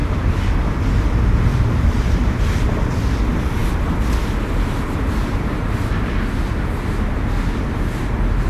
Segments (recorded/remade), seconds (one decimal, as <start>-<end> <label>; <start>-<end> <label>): 0.0-0.9 remade; 0.9-1.5 recorded; 1.5-2.4 remade; 2.4-8.5 recorded